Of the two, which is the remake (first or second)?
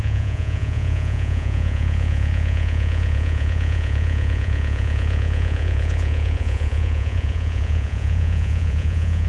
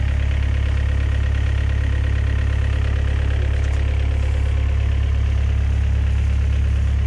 first